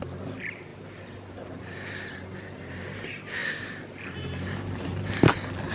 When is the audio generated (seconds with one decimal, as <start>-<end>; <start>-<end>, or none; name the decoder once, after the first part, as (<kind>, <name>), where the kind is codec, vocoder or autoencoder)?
none